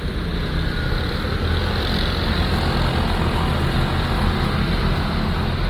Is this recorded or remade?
recorded